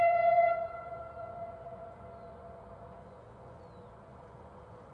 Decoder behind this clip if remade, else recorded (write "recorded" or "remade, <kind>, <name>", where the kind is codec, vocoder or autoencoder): remade, vocoder, Vocos